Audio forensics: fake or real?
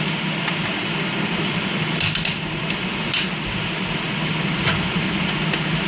real